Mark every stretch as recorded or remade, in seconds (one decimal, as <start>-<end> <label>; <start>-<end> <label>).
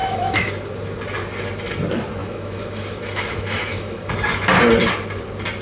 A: 0.0-0.5 remade; 0.5-2.2 recorded; 2.2-4.1 remade; 4.1-5.6 recorded